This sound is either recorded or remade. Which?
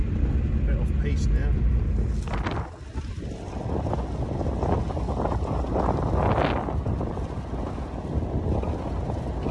recorded